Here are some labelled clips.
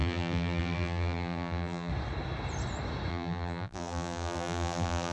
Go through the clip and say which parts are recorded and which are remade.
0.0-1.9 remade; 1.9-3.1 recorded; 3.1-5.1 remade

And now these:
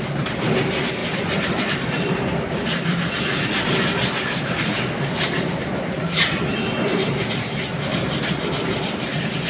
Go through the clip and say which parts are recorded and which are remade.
0.0-1.0 recorded; 1.0-1.8 remade; 1.8-2.9 recorded; 2.9-3.4 remade; 3.4-9.5 recorded

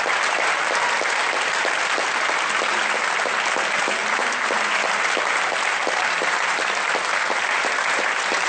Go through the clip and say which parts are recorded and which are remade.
0.0-5.8 recorded; 5.8-6.8 remade; 6.8-8.5 recorded

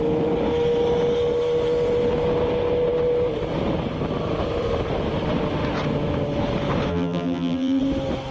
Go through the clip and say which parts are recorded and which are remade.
0.0-6.9 recorded; 6.9-7.8 remade; 7.8-8.3 recorded

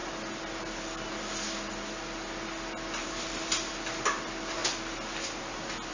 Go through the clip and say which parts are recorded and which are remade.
0.0-3.0 recorded; 3.0-3.7 remade; 3.7-5.9 recorded

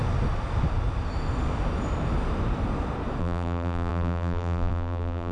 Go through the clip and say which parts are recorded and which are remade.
0.0-3.2 recorded; 3.2-5.3 remade

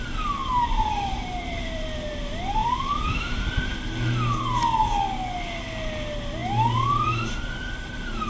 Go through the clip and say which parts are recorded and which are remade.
0.0-0.4 recorded; 0.4-2.1 remade; 2.1-2.6 recorded; 2.6-3.5 remade; 3.5-6.4 recorded; 6.4-7.3 remade; 7.3-8.3 recorded

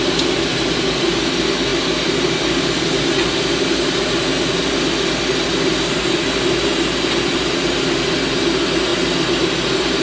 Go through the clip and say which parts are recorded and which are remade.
0.0-10.0 recorded